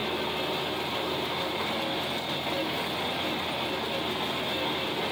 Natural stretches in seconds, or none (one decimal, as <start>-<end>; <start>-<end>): 0.0-5.1